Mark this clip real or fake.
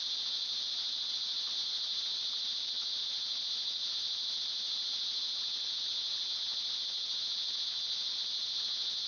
real